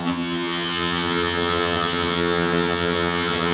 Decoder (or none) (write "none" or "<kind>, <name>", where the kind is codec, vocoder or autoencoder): vocoder, HiFi-GAN